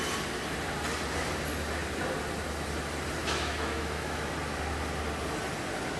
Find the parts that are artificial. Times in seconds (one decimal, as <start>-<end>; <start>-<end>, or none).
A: 3.2-4.3